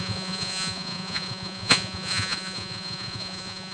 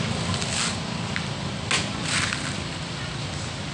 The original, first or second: second